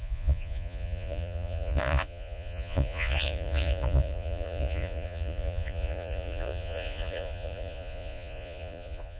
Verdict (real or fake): fake